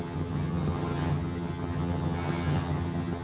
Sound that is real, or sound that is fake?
fake